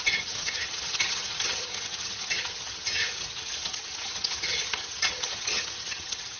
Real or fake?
fake